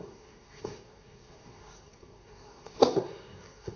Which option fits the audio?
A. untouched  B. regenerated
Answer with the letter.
B